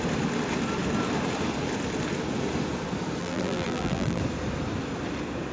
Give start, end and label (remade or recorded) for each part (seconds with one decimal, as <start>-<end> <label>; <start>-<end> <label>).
0.0-3.2 recorded; 3.2-4.2 remade; 4.2-5.5 recorded